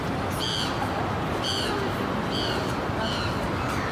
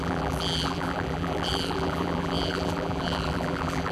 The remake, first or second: second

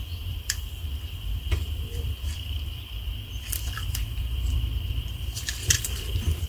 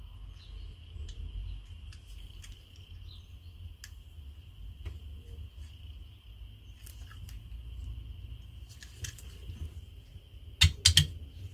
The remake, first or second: first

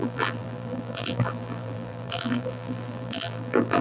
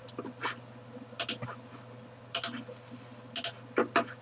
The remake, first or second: first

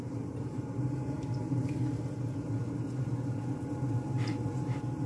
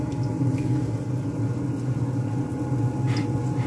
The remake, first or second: first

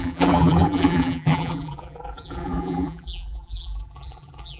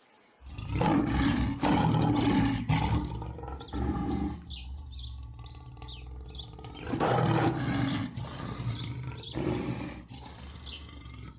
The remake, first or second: first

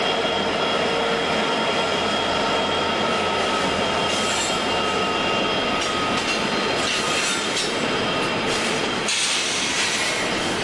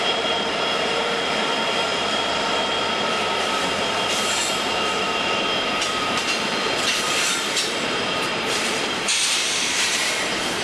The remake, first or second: second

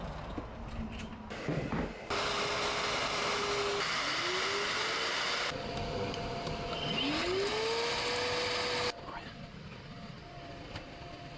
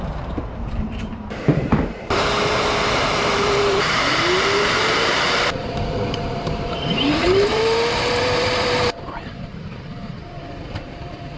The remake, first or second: second